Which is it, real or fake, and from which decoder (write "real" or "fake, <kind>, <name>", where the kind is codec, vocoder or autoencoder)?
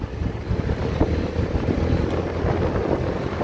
real